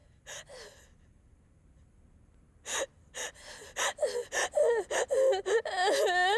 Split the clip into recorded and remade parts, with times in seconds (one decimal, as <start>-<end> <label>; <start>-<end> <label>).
0.0-6.4 recorded